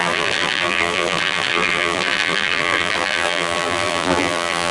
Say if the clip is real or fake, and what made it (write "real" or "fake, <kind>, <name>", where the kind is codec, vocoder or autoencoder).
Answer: fake, vocoder, BigVGAN v2